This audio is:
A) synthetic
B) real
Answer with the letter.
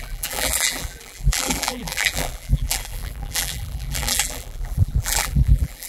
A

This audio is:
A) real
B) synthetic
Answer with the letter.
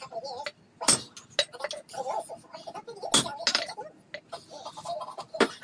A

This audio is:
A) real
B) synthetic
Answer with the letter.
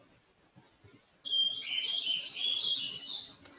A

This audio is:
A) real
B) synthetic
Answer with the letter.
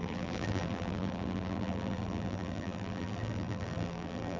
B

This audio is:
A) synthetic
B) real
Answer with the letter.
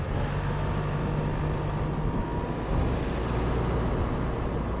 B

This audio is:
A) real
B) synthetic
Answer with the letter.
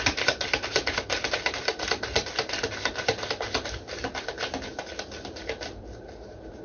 A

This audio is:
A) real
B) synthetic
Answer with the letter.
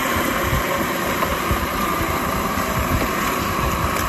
B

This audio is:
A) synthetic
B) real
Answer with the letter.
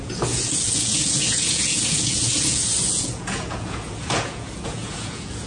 A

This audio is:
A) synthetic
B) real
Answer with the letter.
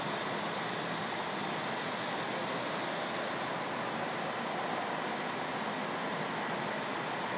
B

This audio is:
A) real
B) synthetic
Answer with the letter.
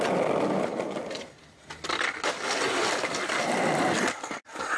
B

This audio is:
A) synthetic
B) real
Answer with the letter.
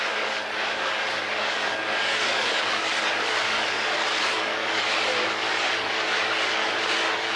A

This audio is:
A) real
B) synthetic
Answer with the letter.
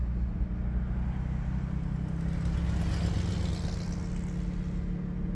A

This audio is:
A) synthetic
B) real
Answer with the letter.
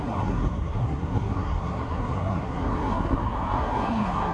A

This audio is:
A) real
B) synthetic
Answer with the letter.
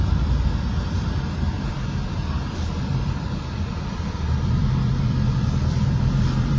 B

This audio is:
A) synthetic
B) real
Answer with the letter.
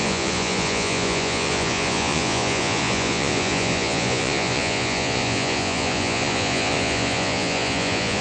A